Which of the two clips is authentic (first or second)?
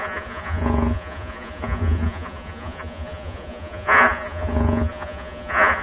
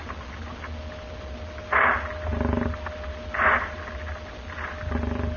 second